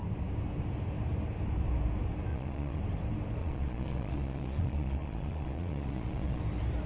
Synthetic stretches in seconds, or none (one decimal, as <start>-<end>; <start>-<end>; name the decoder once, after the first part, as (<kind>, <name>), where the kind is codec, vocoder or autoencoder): 2.3-2.8 (vocoder, Vocos); 3.4-6.4